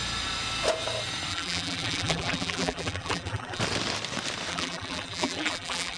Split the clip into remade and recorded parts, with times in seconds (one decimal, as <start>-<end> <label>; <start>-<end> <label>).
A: 0.0-1.3 recorded; 1.3-3.6 remade; 3.6-4.5 recorded; 4.5-6.0 remade